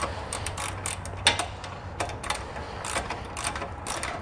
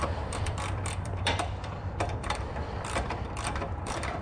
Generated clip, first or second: second